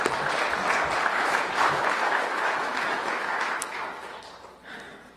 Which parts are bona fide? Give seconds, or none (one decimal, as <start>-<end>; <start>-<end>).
0.0-1.1; 4.2-5.2